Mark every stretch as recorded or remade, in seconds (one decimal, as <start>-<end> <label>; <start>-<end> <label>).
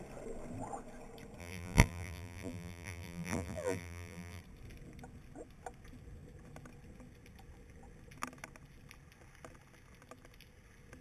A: 0.0-1.4 recorded; 1.4-4.4 remade; 4.4-11.0 recorded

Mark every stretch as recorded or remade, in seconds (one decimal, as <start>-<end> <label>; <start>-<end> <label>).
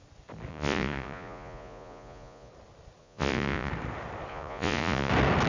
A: 0.0-0.5 recorded; 0.5-2.5 remade; 2.5-3.0 recorded; 3.0-3.7 remade; 3.7-4.3 recorded; 4.3-5.1 remade; 5.1-5.5 recorded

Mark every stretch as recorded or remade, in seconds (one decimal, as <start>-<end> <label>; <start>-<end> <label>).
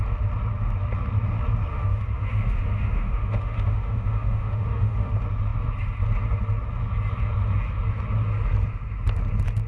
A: 0.0-1.7 recorded; 1.7-5.1 remade; 5.1-9.7 recorded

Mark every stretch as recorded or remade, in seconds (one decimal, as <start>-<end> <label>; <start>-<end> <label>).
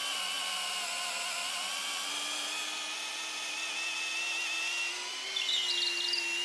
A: 0.0-6.4 recorded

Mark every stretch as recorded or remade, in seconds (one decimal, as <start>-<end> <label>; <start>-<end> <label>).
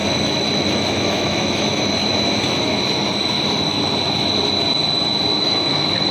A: 0.0-0.7 recorded; 0.7-1.7 remade; 1.7-5.4 recorded; 5.4-6.1 remade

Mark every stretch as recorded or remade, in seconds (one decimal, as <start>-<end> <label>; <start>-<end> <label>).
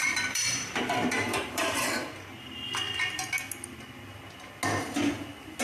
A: 0.0-2.0 remade; 2.0-5.6 recorded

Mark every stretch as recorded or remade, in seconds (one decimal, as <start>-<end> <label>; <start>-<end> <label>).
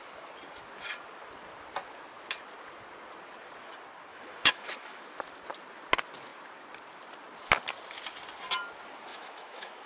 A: 0.0-4.1 recorded; 4.1-5.0 remade; 5.0-9.1 recorded; 9.1-9.9 remade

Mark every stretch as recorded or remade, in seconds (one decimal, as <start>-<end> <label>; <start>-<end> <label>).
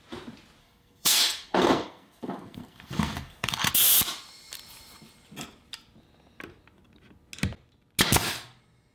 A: 0.0-0.6 recorded; 0.6-3.7 remade; 3.7-8.9 recorded